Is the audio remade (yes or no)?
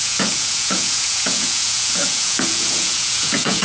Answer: yes